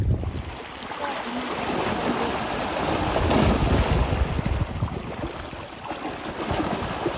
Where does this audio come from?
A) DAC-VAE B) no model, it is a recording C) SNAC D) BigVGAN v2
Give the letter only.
B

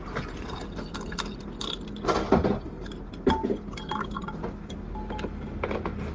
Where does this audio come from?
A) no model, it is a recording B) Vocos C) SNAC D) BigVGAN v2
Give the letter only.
A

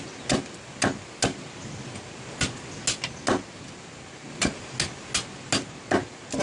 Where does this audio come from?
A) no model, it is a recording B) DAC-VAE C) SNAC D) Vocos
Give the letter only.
A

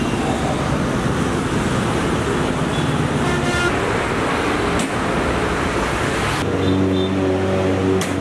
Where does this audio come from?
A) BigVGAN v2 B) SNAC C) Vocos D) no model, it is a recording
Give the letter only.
D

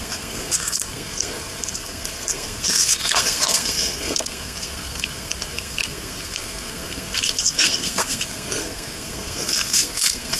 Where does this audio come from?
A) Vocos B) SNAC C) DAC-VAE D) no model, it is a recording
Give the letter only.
B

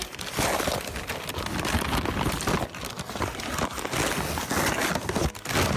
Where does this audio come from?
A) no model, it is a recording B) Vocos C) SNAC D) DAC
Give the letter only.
A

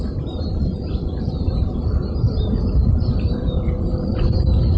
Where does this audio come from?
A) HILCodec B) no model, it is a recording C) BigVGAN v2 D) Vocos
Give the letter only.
C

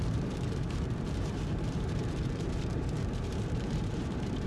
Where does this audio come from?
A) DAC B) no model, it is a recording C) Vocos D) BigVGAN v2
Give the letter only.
D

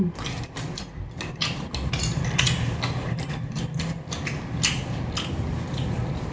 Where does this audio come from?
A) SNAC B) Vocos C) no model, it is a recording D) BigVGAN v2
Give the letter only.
C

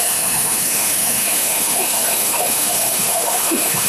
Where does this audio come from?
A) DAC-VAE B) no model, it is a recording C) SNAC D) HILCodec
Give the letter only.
A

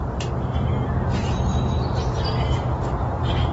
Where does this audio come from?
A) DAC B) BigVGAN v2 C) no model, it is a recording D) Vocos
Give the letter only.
C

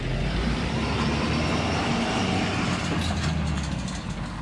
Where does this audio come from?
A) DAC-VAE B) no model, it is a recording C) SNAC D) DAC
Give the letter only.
B